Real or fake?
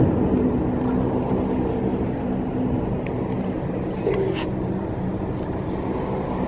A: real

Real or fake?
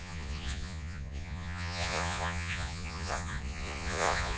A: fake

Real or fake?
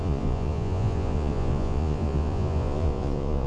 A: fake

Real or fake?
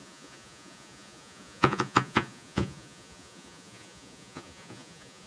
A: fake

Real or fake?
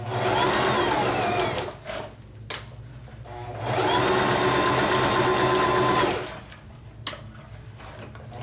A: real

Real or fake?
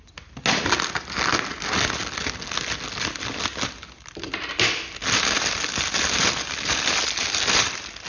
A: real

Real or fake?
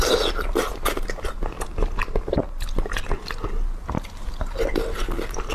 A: real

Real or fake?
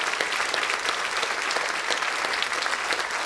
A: real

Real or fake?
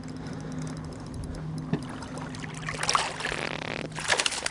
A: real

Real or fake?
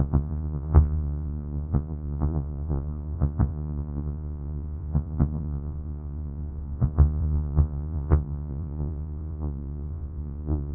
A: fake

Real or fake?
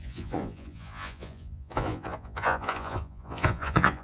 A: fake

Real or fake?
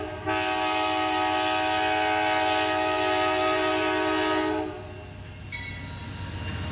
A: real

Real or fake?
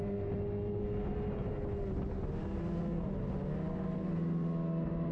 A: real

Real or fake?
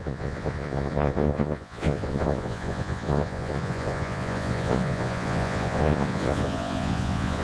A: fake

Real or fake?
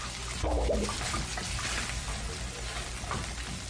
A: real